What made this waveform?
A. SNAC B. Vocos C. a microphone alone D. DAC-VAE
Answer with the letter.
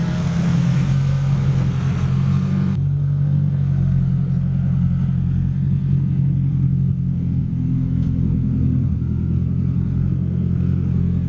A